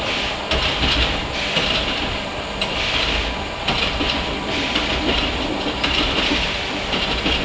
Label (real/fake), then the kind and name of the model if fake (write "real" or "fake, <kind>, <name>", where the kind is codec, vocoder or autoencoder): fake, vocoder, BigVGAN v2